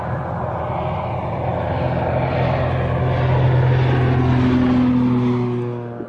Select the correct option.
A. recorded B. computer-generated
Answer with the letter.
A